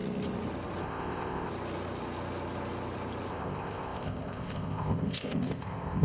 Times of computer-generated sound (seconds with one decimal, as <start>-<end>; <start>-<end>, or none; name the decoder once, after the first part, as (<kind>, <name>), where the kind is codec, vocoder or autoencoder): 0.8-1.5 (codec, ZipCodec); 3.3-6.0